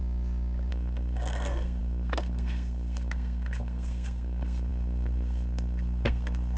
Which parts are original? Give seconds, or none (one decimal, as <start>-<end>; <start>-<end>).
0.0-0.7